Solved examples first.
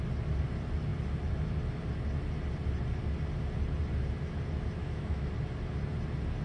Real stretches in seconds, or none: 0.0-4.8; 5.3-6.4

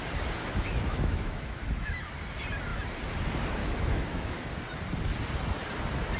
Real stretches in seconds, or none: 0.0-0.4; 2.0-3.6; 4.5-6.2

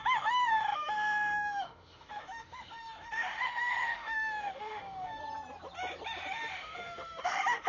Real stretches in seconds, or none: 5.2-6.3

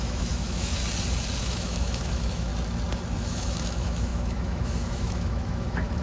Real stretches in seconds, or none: 0.8-1.4; 2.5-3.2

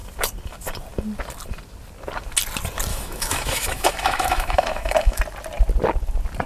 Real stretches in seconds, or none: 0.0-2.9; 5.2-6.5